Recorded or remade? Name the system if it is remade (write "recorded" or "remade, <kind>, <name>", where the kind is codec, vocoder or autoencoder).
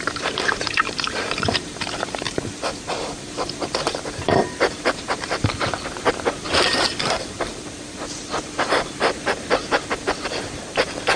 remade, vocoder, BigVGAN v2